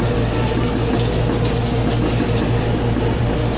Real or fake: real